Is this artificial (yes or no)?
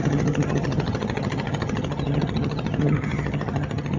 yes